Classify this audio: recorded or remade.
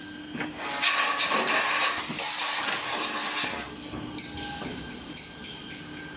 recorded